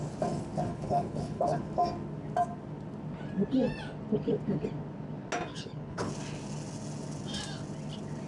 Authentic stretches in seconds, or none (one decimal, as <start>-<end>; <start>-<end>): 0.0-0.7; 1.6-5.5; 6.1-8.3

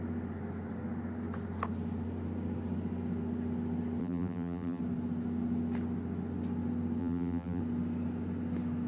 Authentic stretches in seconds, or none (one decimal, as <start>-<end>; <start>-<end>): 0.0-4.0; 4.8-7.0; 7.6-8.9

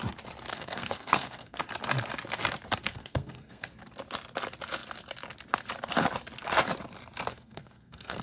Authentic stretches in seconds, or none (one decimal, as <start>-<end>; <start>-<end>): 0.0-0.5; 1.6-2.9; 3.7-7.3

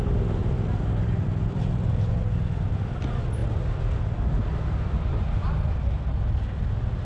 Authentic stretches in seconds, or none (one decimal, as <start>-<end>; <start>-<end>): 0.0-0.4; 2.1-3.4; 4.0-4.4; 5.9-7.0

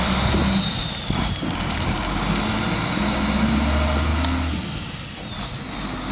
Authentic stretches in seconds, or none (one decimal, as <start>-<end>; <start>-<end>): 0.0-6.1

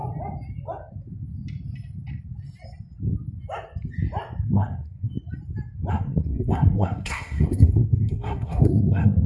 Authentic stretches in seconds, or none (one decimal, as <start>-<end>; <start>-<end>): 0.0-4.4; 5.1-5.9